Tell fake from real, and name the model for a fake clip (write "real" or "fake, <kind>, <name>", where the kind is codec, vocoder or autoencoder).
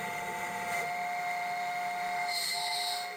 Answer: fake, autoencoder, DAC-VAE